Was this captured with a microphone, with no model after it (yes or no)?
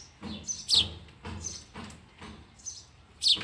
yes